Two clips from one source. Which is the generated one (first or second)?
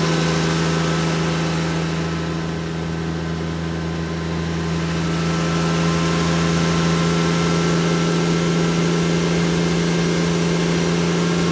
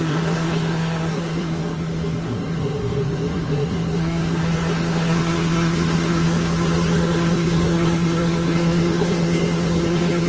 second